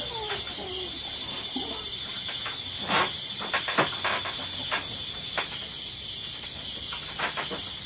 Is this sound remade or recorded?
recorded